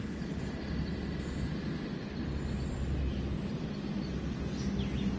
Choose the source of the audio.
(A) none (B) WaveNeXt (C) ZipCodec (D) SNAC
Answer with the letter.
A